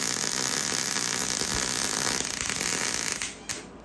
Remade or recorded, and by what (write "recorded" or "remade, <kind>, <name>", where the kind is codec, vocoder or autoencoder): recorded